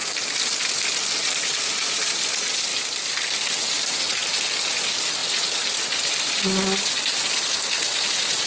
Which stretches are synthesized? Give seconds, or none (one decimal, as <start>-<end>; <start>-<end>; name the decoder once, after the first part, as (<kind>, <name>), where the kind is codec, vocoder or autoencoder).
none